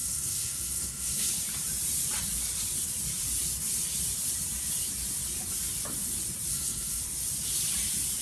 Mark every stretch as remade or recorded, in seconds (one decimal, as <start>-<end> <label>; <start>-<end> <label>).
0.0-1.3 remade; 1.3-6.5 recorded; 6.5-7.0 remade; 7.0-8.2 recorded